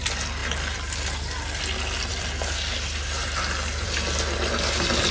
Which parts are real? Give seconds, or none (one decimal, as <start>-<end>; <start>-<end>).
0.0-5.1